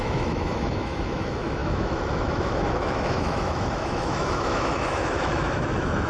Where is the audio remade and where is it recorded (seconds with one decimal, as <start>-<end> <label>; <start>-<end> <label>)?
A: 0.0-6.1 remade